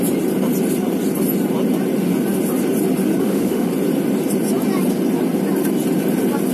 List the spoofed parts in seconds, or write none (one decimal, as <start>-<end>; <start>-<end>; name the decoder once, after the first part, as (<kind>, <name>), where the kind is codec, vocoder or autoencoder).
3.2-3.7 (autoencoder, DAC-VAE)